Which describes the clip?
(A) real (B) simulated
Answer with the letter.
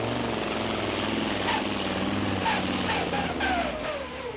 A